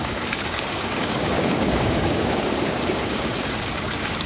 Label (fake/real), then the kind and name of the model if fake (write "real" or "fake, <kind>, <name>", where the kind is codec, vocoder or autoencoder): fake, codec, DAC